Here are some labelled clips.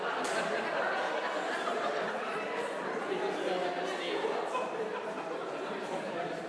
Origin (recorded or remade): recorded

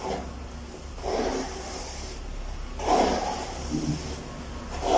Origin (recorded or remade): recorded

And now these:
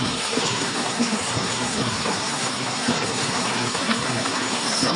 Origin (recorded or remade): remade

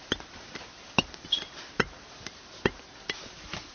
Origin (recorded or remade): recorded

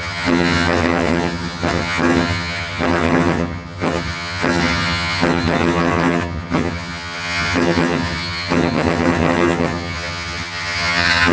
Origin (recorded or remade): remade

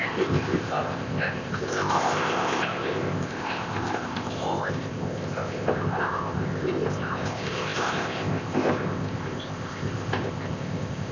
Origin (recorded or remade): remade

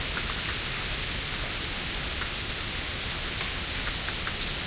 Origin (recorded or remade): recorded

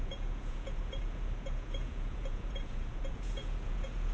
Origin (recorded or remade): remade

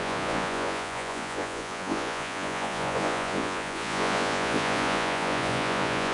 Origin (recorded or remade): remade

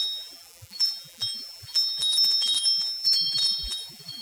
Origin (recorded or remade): remade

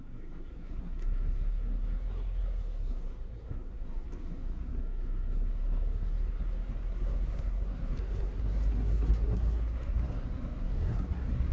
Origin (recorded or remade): remade